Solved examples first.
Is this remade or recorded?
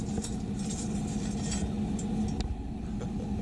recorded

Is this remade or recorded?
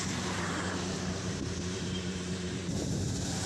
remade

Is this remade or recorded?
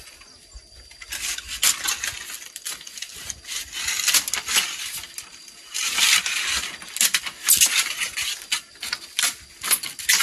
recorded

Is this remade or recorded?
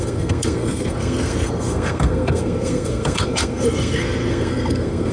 remade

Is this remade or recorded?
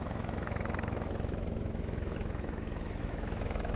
remade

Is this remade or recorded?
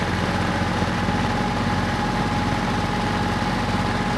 recorded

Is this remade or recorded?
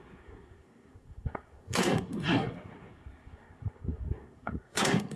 remade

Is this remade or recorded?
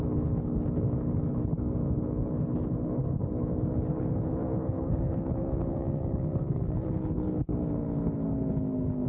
remade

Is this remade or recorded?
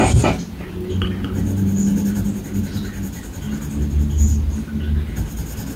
recorded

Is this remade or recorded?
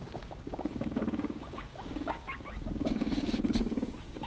remade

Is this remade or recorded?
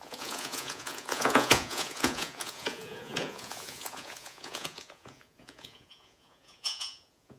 remade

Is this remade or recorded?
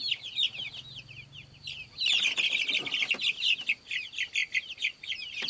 recorded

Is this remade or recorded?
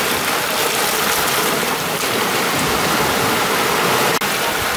recorded